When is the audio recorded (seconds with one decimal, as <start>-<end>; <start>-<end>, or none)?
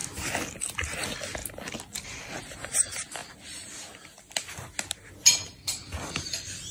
0.0-6.7